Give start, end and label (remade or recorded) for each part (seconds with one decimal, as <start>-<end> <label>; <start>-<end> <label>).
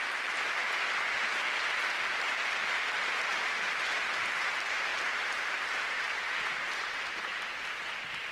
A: 0.0-3.3 recorded; 3.3-4.0 remade; 4.0-4.9 recorded; 4.9-7.7 remade; 7.7-8.3 recorded